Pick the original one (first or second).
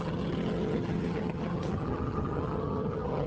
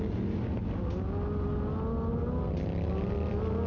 second